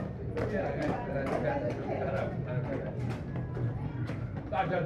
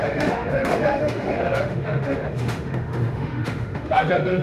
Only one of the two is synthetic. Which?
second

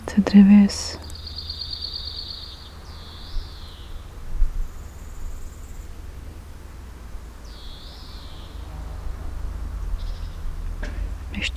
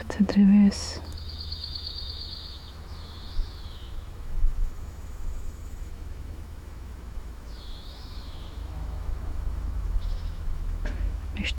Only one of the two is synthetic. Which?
second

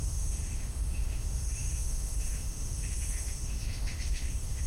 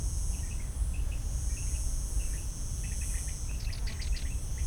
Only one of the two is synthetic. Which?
first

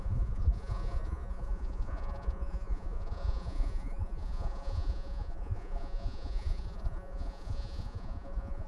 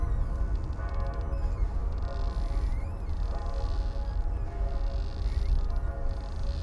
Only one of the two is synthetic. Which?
first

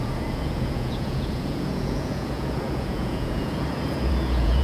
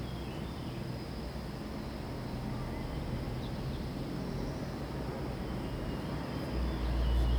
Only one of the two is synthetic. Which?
first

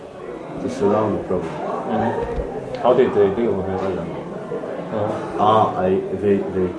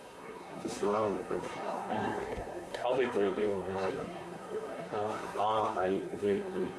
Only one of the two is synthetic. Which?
second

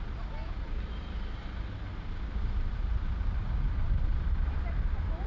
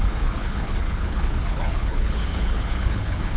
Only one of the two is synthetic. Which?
second